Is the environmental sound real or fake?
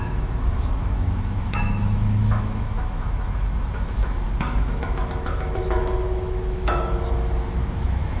fake